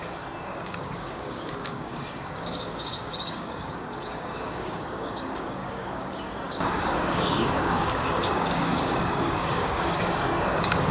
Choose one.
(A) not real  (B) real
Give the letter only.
A